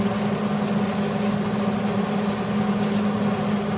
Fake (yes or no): no